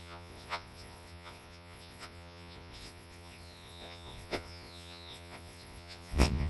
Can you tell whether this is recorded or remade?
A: remade